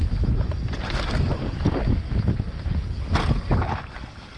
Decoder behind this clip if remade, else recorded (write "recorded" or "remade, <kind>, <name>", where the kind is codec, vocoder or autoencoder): recorded